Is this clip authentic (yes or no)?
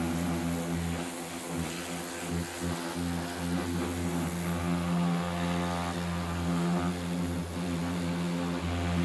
yes